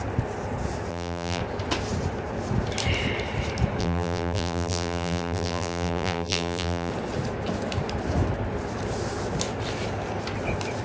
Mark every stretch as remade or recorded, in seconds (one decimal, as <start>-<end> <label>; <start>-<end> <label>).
0.0-0.9 recorded; 0.9-1.4 remade; 1.4-3.8 recorded; 3.8-6.9 remade; 6.9-10.8 recorded